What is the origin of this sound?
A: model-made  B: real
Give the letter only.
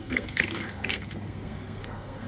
A